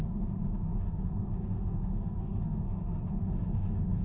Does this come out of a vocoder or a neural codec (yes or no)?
yes